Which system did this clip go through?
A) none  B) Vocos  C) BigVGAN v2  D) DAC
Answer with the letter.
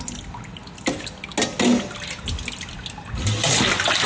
A